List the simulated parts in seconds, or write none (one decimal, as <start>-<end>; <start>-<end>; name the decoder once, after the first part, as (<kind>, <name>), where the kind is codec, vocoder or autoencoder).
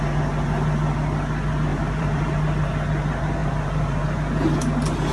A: 1.7-2.4 (vocoder, BigVGAN v2); 3.4-4.0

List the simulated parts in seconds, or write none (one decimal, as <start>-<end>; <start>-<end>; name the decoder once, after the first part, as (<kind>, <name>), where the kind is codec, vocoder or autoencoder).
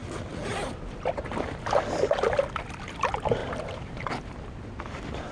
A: 3.4-4.1 (vocoder, BigVGAN v2)